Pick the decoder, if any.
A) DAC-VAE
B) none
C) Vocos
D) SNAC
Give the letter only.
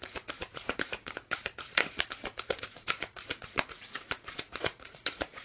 C